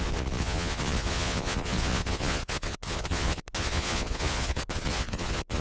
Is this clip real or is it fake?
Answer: fake